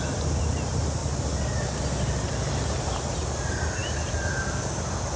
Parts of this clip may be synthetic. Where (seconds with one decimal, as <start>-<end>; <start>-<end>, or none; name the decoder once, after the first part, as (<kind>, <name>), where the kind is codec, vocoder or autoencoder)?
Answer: none